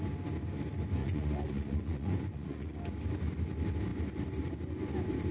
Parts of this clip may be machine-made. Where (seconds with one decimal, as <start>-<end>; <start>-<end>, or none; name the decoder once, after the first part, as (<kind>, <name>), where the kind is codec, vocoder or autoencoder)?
1.0-2.8 (vocoder, Vocos)